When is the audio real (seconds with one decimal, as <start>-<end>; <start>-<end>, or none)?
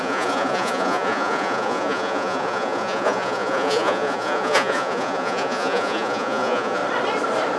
6.8-7.6